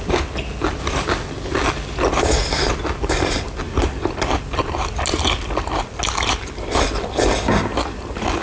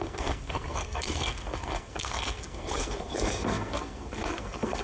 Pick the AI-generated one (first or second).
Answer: second